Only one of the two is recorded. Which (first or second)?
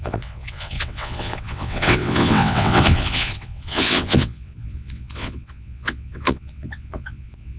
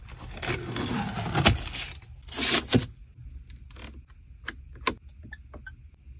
second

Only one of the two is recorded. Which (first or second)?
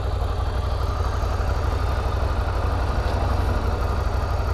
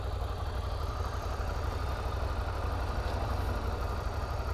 first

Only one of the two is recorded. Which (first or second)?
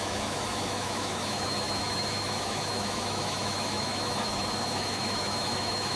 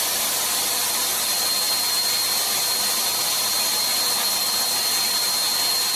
second